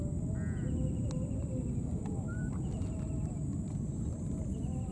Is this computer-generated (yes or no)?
no